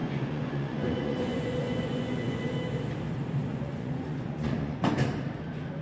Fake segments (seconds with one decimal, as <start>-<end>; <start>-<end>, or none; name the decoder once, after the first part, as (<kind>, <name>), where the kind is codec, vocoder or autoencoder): 0.0-2.4 (vocoder, Vocos); 3.5-4.9